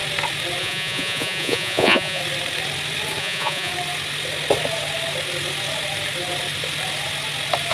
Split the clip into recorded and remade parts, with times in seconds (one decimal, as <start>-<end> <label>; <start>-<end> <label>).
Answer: 0.0-0.6 recorded; 0.6-2.2 remade; 2.2-3.2 recorded; 3.2-3.7 remade; 3.7-7.7 recorded